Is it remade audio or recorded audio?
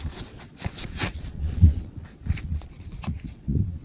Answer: remade